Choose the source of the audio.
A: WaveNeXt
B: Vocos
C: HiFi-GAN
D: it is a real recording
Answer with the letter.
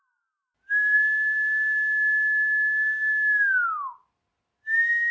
D